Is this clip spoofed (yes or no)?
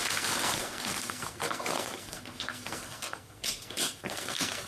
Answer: yes